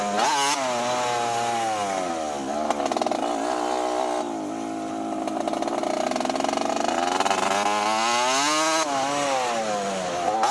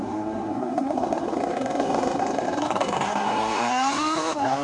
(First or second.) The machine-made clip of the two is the second